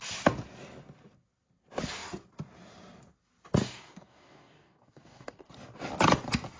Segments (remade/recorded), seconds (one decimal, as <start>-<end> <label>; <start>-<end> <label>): 0.0-3.6 recorded; 3.6-5.5 remade; 5.5-6.6 recorded